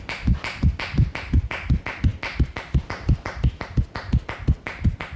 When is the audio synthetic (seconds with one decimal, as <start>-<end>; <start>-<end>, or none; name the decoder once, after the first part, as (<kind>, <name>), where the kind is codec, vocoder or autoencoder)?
none